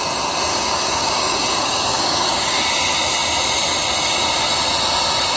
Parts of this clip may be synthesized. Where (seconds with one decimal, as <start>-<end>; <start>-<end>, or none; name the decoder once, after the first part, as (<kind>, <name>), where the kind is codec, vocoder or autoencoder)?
0.5-2.6 (codec, DAC)